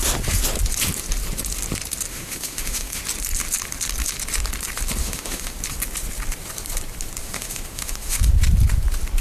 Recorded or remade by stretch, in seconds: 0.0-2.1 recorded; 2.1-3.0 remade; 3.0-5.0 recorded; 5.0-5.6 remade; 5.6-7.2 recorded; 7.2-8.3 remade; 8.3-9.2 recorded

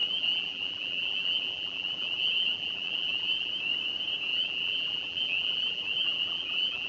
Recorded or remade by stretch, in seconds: 0.0-3.5 remade; 3.5-4.3 recorded; 4.3-6.9 remade

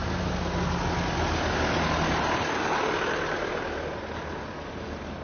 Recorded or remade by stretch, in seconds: 0.0-5.2 recorded

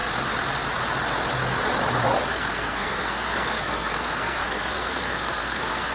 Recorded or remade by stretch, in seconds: 0.0-2.3 recorded; 2.3-5.9 remade

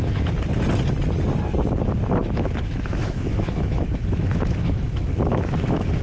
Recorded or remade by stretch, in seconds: 0.0-2.2 recorded; 2.2-6.0 remade